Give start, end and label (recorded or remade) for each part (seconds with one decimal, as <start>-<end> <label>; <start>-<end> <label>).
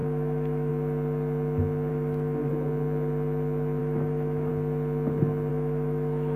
0.0-0.7 remade; 0.7-1.9 recorded; 1.9-2.5 remade; 2.5-3.8 recorded; 3.8-4.5 remade; 4.5-5.5 recorded; 5.5-6.4 remade